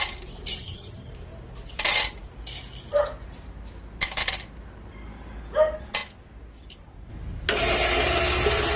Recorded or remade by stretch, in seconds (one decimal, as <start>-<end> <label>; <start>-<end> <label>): 0.0-0.6 recorded; 0.6-1.1 remade; 1.1-8.8 recorded